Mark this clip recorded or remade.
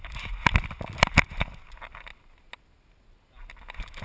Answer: recorded